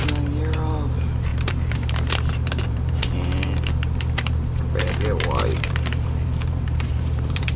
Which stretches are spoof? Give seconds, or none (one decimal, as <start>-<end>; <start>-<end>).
1.3-3.0; 5.5-7.6